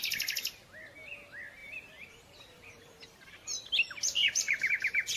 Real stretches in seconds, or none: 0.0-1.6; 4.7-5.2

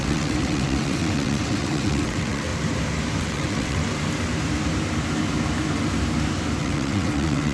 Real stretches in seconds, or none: 2.5-3.2; 3.8-6.6

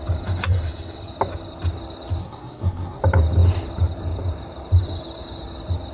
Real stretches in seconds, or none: 0.0-2.2; 3.0-5.9

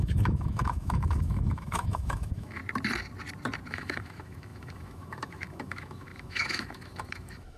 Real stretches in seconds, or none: 2.6-3.7

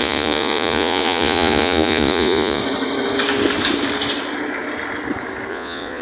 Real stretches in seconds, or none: 2.6-5.5

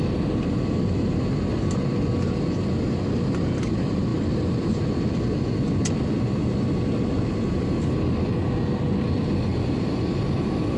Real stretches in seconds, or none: 0.0-10.8

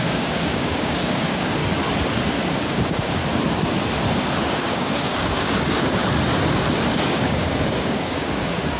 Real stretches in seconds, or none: 1.6-2.7; 3.2-4.5; 6.0-7.1

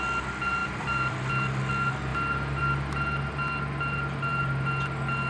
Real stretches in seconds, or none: 0.0-0.6; 1.3-5.3